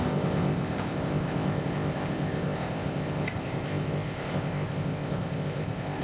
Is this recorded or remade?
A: remade